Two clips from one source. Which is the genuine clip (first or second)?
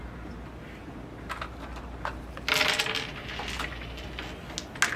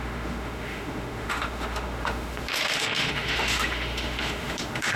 first